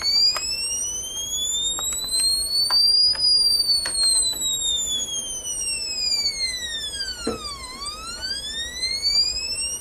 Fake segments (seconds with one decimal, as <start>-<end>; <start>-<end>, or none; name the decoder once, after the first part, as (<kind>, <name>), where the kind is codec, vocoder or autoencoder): 0.8-1.5 (vocoder, BigVGAN v2); 4.5-8.3